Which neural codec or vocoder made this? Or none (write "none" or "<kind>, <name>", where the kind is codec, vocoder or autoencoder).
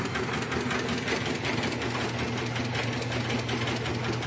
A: none